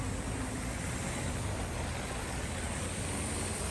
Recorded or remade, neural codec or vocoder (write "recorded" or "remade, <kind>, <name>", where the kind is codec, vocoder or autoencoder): recorded